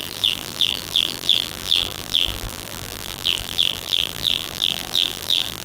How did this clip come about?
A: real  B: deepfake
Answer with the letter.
B